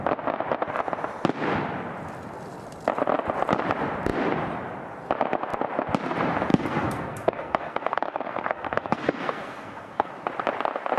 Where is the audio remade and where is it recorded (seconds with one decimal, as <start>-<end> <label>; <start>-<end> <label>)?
0.0-6.5 recorded; 6.5-10.1 remade; 10.1-11.0 recorded

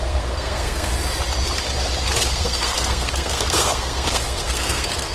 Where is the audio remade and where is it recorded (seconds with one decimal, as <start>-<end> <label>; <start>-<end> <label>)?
0.0-0.9 remade; 0.9-2.3 recorded; 2.3-5.1 remade

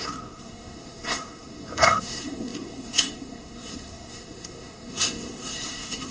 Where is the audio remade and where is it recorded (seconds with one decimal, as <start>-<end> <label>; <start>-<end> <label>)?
0.0-6.1 remade

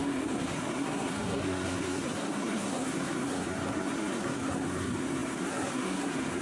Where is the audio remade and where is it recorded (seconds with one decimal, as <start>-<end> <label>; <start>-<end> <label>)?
0.0-6.4 remade

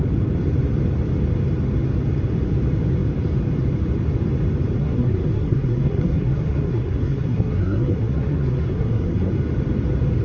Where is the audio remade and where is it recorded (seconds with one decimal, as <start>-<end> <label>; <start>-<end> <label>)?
0.0-4.8 recorded; 4.8-9.3 remade; 9.3-10.2 recorded

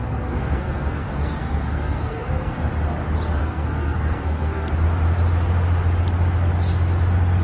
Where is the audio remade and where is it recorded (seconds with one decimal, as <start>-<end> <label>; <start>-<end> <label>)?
0.0-2.7 remade; 2.7-3.4 recorded; 3.4-4.7 remade; 4.7-7.4 recorded